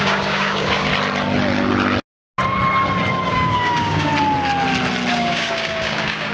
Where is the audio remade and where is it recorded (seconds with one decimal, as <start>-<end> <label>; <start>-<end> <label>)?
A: 0.0-0.9 remade; 0.9-3.3 recorded; 3.3-4.1 remade; 4.1-5.1 recorded; 5.1-6.3 remade